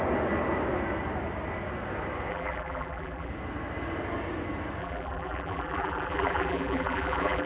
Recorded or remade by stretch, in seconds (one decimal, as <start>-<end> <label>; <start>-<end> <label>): 0.0-2.3 recorded; 2.3-3.3 remade; 3.3-4.8 recorded; 4.8-7.5 remade